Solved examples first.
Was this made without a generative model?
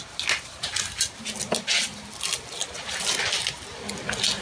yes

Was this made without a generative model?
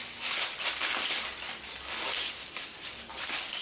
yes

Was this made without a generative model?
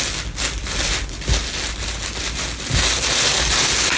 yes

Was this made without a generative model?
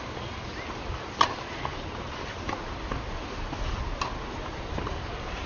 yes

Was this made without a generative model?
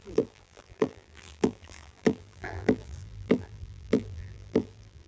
no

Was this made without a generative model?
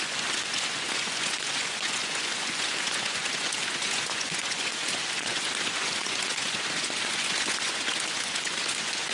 no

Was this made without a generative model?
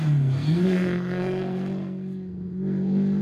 no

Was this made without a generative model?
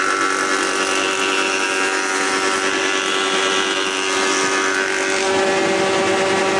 yes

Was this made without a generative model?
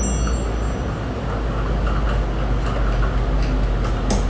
yes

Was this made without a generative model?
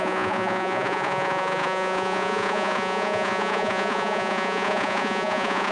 no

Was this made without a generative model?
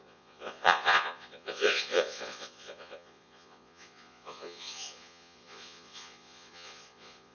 no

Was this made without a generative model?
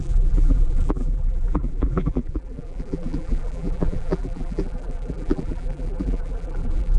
no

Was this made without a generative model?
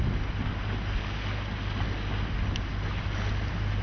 yes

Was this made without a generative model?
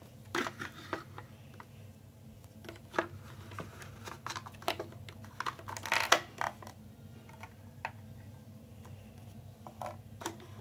yes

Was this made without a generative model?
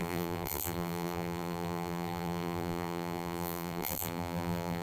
no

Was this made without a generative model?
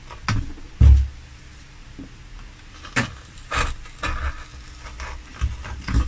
yes